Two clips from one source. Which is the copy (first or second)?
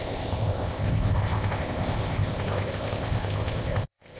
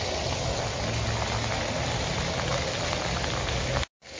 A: first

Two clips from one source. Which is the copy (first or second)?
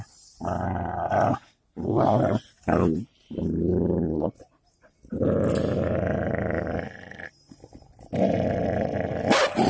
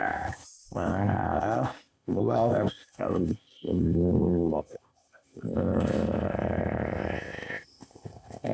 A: second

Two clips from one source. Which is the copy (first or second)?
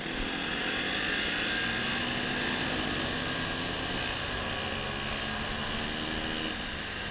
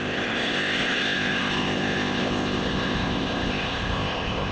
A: second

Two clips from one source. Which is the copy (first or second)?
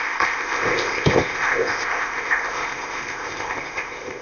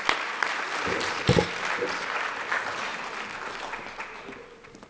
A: first